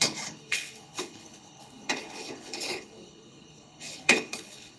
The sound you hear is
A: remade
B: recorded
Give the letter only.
A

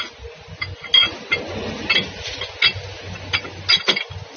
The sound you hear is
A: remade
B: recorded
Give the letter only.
B